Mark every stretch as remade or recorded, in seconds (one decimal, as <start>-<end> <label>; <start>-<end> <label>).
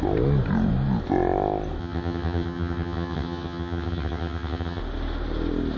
0.0-1.8 recorded; 1.8-4.8 remade; 4.8-5.8 recorded